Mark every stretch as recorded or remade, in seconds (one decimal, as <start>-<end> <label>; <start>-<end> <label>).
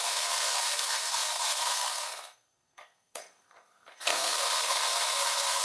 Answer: 0.0-5.6 remade